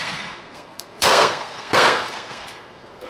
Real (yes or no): no